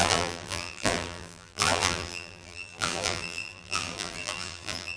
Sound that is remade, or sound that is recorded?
remade